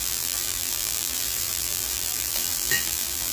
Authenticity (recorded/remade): remade